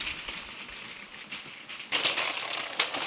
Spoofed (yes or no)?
no